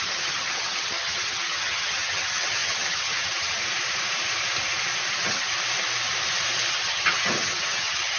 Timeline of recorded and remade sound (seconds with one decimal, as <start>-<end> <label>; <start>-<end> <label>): 0.0-3.6 remade; 3.6-5.1 recorded; 5.1-5.5 remade; 5.5-6.7 recorded; 6.7-8.2 remade